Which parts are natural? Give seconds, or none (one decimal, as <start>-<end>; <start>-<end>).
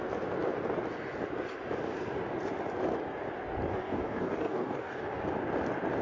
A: 0.0-3.7; 5.2-6.0